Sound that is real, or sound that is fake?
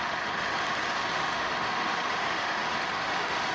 fake